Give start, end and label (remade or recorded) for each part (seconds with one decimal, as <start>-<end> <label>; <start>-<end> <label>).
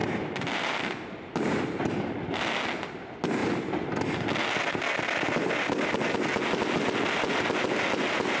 0.0-1.6 remade; 1.6-8.4 recorded